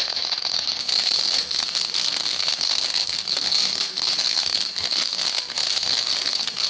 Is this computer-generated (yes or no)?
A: yes